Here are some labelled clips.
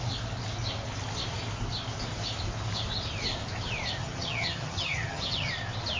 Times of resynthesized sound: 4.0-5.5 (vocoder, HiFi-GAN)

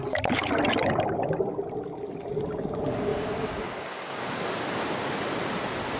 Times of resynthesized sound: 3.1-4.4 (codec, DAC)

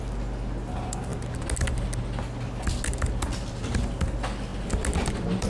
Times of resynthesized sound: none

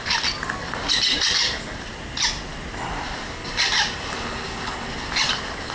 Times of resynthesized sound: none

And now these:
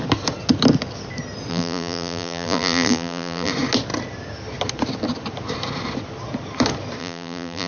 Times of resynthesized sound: 1.5-3.5 (vocoder, BigVGAN v2); 7.0-7.7

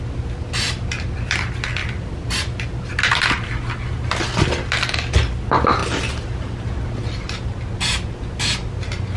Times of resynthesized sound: 1.8-2.4 (vocoder, BigVGAN v2); 5.8-7.6

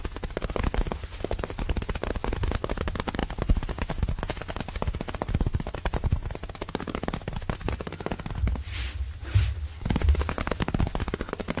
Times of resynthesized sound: none